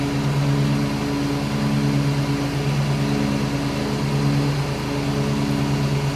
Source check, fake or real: real